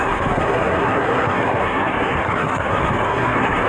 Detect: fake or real fake